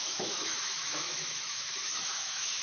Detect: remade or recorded remade